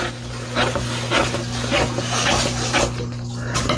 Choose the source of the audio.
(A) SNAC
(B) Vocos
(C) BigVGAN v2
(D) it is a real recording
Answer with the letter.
D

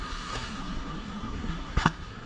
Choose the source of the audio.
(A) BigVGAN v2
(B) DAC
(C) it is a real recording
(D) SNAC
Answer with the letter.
D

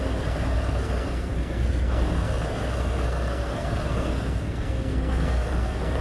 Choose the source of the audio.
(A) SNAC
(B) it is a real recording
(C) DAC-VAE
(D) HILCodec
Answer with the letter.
A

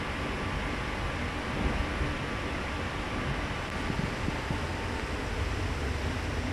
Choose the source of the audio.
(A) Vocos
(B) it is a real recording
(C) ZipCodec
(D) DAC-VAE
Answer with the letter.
B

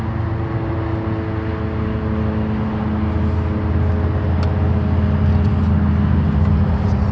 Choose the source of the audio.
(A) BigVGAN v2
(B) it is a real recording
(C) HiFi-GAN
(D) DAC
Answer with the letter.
B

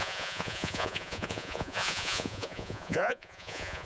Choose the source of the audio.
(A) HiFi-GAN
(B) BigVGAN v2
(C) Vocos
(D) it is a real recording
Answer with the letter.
C